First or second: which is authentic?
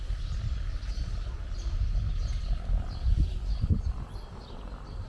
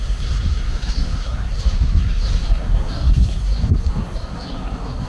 first